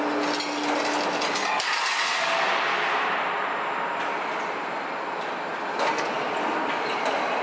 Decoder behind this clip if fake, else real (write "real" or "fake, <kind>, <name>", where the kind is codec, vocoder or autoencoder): real